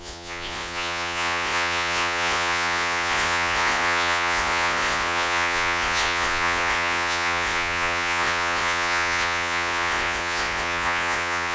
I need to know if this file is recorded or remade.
remade